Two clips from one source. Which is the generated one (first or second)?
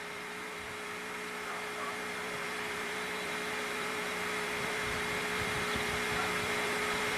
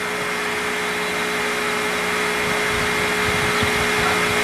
first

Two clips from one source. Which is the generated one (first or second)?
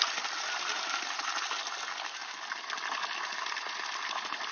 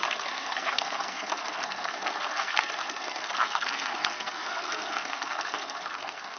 second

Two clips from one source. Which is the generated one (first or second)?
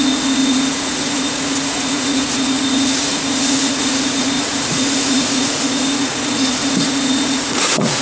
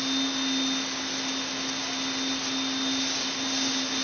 first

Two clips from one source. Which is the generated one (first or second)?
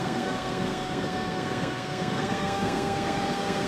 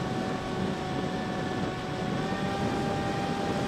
first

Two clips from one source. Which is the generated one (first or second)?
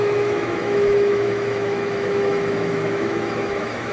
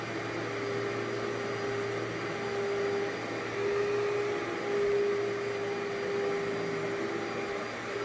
first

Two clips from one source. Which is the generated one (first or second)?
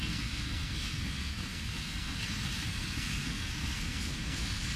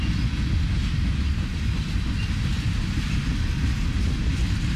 first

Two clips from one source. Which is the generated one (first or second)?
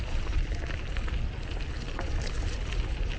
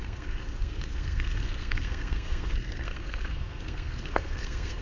second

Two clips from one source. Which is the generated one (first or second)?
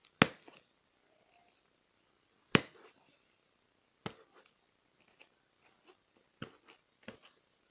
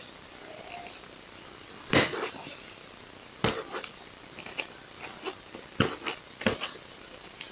second